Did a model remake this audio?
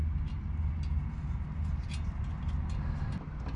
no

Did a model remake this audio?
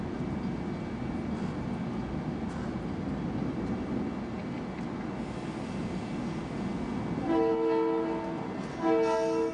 no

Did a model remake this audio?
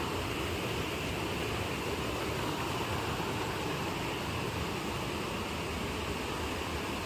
no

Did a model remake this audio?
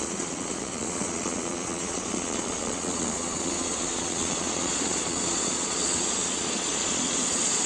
yes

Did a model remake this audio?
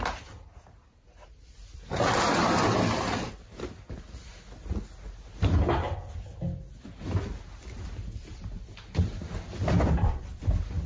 no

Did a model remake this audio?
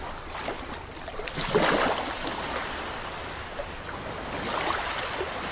no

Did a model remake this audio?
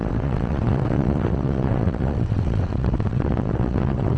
yes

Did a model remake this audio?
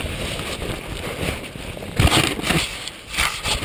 no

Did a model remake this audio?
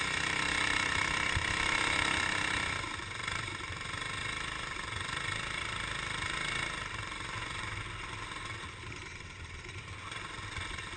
yes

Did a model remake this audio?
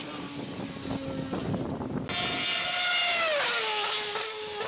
no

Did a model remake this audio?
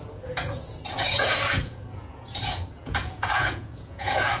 yes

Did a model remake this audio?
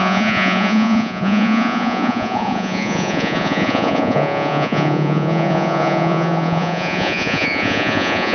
yes